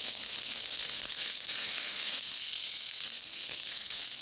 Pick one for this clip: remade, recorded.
remade